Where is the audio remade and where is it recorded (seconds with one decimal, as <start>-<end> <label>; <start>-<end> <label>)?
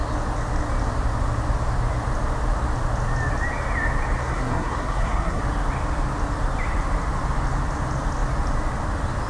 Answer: 0.0-4.2 recorded; 4.2-5.4 remade; 5.4-9.3 recorded